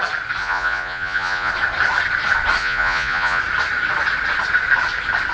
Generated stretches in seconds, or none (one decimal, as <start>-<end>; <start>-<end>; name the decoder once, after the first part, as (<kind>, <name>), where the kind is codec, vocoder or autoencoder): 0.4-1.5 (vocoder, Vocos); 2.6-3.4